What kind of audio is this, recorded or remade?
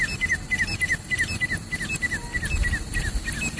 recorded